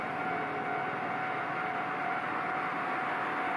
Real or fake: real